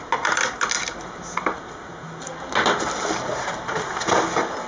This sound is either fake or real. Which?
real